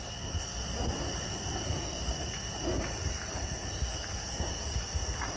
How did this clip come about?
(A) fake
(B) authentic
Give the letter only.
A